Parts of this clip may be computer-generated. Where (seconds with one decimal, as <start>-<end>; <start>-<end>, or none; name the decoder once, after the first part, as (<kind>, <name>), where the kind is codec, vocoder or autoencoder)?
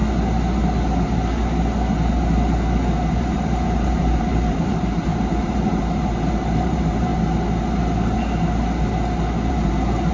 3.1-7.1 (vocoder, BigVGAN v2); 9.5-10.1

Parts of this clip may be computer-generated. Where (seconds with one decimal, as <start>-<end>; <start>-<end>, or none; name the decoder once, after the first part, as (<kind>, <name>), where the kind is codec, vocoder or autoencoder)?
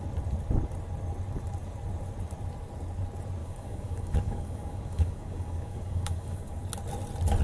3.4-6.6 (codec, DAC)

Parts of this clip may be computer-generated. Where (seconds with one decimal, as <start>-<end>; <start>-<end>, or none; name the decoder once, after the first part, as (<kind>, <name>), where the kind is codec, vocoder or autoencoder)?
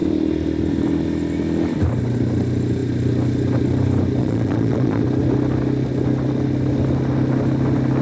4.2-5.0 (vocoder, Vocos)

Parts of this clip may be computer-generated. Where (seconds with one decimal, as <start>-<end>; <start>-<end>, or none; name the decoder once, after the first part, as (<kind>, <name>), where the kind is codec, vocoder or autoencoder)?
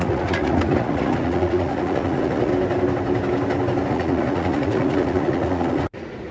0.0-2.5 (vocoder, Vocos); 3.9-6.3